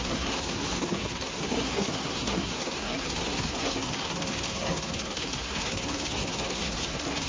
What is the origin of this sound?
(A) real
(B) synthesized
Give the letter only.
B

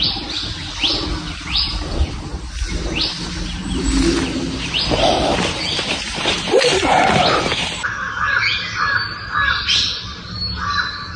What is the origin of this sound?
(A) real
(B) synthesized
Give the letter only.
A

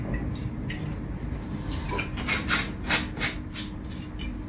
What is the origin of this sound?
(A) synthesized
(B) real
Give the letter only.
B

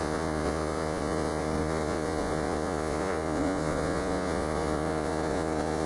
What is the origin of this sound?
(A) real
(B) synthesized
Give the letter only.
B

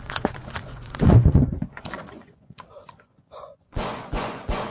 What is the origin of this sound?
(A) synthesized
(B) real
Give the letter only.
A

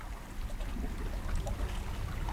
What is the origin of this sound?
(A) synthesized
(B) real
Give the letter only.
B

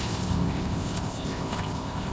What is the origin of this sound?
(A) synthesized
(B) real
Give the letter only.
A